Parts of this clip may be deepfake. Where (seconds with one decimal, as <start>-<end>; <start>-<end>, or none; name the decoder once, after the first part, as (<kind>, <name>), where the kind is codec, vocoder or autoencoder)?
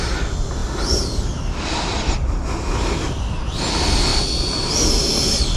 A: none